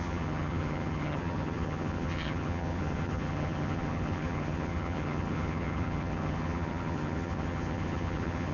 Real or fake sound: fake